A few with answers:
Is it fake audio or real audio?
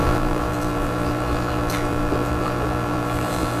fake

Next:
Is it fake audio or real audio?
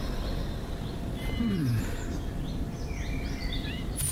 real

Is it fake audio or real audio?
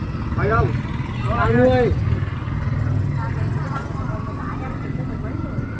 real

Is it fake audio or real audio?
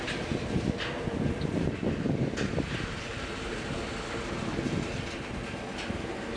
real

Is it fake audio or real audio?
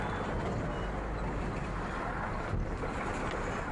fake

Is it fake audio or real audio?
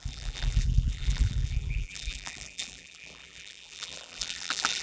fake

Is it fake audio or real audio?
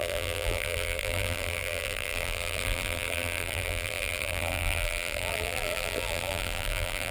fake